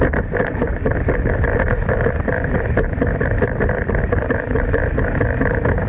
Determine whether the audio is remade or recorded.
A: remade